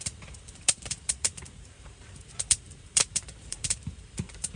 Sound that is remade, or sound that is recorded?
remade